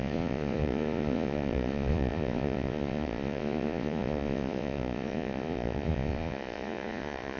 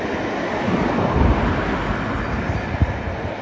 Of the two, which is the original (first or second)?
second